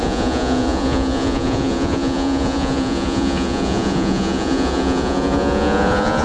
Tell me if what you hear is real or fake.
fake